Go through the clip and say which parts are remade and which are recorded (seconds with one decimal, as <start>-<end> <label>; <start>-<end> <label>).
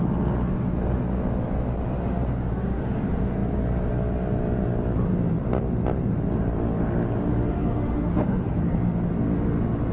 0.0-2.5 recorded; 2.5-3.0 remade; 3.0-7.3 recorded; 7.3-8.6 remade; 8.6-9.9 recorded